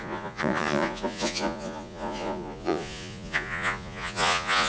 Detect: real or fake fake